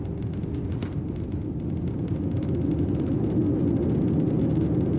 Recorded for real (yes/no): yes